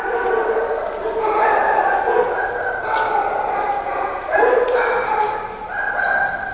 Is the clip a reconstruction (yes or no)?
yes